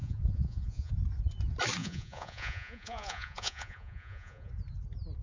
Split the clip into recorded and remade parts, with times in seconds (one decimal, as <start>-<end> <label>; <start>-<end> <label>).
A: 0.0-0.9 remade; 0.9-1.8 recorded; 1.8-4.5 remade; 4.5-5.2 recorded